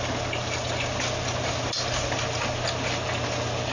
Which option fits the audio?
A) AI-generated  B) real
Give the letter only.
B